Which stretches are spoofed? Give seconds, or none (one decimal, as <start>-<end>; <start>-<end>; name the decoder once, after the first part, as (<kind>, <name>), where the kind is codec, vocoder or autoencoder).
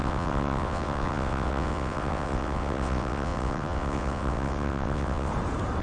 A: 0.0-5.3 (vocoder, WaveNeXt)